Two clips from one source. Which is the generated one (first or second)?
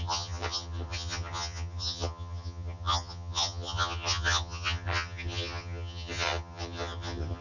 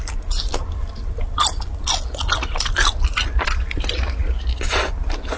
first